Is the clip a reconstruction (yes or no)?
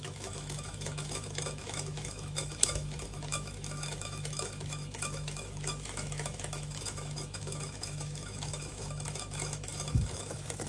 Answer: yes